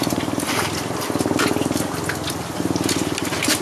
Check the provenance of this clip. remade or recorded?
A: recorded